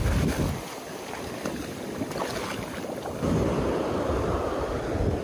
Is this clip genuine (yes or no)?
yes